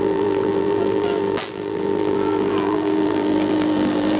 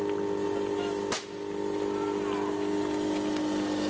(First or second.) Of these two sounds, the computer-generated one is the first